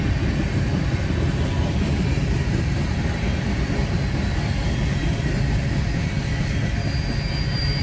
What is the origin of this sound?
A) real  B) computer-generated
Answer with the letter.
A